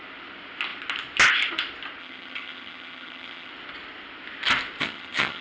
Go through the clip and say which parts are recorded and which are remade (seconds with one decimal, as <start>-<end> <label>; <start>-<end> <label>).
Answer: 0.0-2.0 recorded; 2.0-3.5 remade; 3.5-4.8 recorded; 4.8-5.4 remade